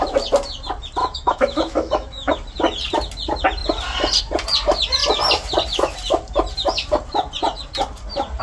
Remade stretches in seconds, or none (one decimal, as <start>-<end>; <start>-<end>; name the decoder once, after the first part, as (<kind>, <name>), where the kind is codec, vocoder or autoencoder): 1.0-2.3 (autoencoder, DAC-VAE)